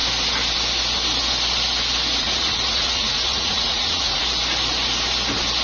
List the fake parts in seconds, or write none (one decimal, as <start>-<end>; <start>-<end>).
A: 2.2-4.2